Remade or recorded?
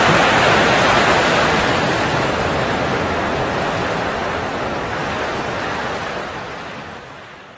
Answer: recorded